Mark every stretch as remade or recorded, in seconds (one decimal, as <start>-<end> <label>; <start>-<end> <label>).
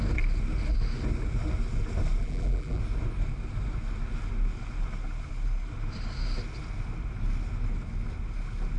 0.0-2.2 recorded; 2.2-2.8 remade; 2.8-8.8 recorded